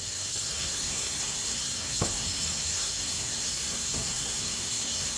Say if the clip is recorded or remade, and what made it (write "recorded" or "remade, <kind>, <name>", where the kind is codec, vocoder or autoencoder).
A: remade, codec, SNAC